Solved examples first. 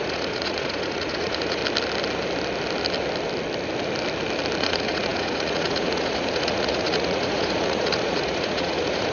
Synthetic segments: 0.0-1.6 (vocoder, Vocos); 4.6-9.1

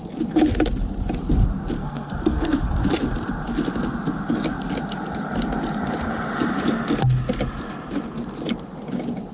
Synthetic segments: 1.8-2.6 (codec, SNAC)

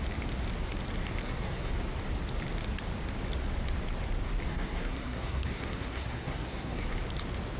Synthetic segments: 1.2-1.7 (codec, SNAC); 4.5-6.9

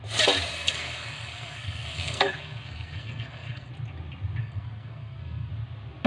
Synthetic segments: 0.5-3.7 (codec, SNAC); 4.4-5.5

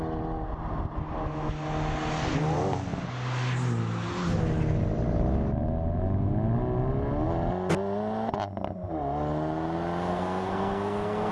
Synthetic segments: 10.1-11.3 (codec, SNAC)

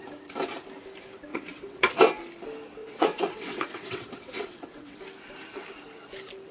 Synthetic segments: 1.3-2.0 (vocoder, WaveNeXt); 2.8-5.0

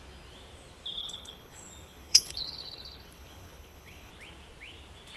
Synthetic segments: 1.0-4.1 (codec, HILCodec)